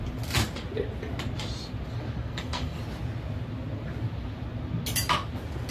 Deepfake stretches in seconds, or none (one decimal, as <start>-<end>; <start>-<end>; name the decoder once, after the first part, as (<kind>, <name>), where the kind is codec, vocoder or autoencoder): 2.2-2.8 (codec, SNAC)